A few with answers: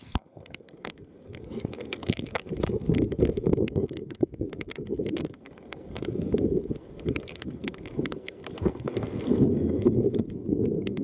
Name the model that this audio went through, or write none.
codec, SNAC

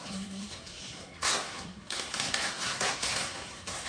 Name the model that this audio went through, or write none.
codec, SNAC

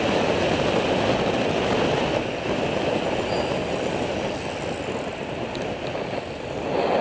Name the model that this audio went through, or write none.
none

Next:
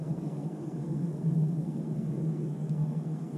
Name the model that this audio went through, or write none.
codec, SNAC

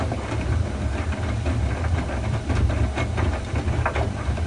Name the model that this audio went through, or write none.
none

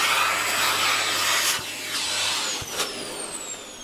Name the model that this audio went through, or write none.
none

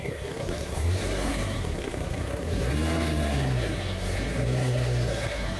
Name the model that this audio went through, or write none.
codec, SNAC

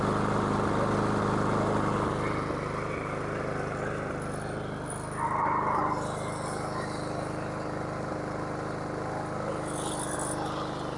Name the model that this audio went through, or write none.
none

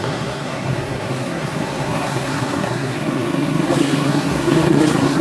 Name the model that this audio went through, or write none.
codec, SNAC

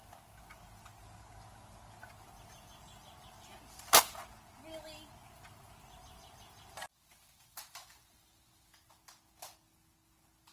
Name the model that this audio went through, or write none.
none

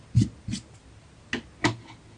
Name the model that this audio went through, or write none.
none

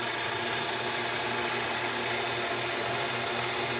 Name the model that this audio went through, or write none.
none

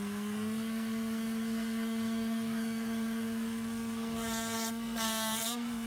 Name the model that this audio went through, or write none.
codec, SNAC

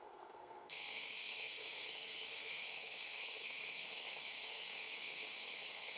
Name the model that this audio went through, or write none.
codec, SNAC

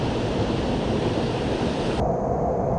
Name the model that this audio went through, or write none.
none